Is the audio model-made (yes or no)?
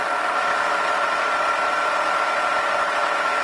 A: no